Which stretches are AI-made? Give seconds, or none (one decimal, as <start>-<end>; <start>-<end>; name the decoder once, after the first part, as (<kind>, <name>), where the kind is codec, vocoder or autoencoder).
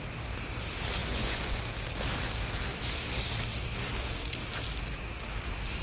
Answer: 1.0-1.6 (vocoder, Vocos)